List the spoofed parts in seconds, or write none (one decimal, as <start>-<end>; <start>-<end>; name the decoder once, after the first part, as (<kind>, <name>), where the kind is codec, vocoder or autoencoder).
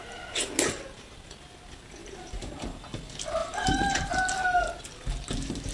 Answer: 2.0-2.8 (vocoder, BigVGAN v2); 3.4-4.8